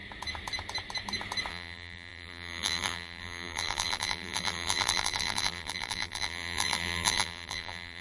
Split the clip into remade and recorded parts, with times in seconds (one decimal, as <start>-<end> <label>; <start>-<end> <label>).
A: 0.0-1.5 recorded; 1.5-8.0 remade